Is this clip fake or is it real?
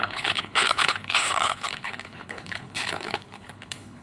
fake